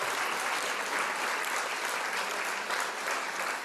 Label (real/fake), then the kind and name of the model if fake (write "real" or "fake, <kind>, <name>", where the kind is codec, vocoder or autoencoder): real